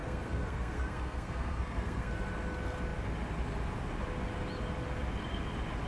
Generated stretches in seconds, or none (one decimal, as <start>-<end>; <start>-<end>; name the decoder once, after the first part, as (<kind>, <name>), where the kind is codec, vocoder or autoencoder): 0.0-2.1 (codec, SNAC)